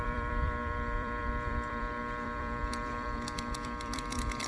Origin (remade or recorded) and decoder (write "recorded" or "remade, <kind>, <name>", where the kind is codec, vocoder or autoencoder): remade, vocoder, BigVGAN v2